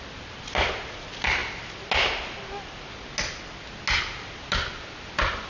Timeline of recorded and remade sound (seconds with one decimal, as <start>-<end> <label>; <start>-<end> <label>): 0.0-5.5 recorded